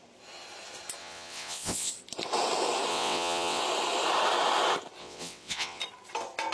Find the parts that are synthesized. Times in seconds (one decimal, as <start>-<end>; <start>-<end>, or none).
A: 1.0-1.9; 2.9-3.6; 5.0-5.8